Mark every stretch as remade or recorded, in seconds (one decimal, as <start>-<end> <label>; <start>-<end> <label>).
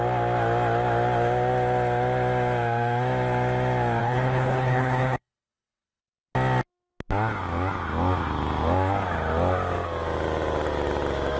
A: 0.0-4.0 recorded; 4.0-6.0 remade; 6.0-11.4 recorded